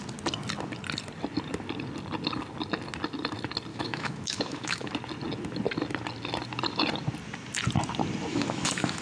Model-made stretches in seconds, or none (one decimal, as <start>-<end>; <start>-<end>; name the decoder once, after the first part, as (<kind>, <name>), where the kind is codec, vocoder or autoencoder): 3.7-4.9 (autoencoder, DAC-VAE); 8.3-9.0